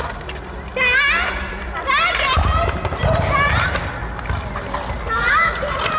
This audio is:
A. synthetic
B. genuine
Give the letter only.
B